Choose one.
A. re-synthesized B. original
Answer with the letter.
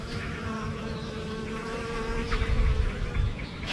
A